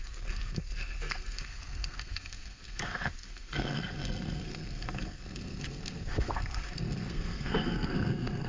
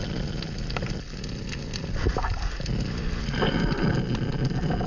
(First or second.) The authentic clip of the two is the second